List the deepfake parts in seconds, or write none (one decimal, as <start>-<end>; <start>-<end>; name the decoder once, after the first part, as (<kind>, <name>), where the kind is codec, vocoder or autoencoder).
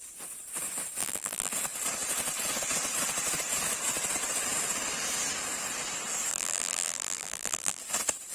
1.0-1.5 (vocoder, BigVGAN v2); 6.3-7.8